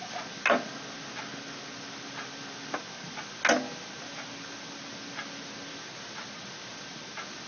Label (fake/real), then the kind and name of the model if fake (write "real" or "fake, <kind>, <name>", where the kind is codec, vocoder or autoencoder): real